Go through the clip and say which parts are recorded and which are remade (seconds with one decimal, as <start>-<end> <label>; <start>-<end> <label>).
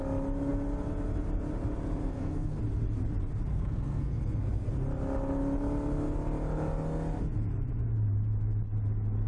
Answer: 0.0-2.0 recorded; 2.0-2.6 remade; 2.6-3.5 recorded; 3.5-4.7 remade; 4.7-9.3 recorded